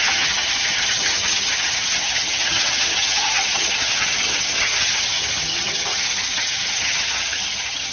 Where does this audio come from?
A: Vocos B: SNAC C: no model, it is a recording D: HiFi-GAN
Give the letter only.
D